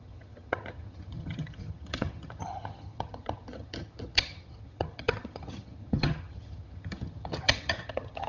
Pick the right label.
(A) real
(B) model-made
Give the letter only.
B